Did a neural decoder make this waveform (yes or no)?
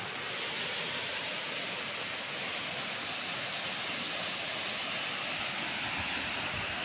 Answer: no